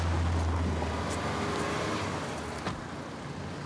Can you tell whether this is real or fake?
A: real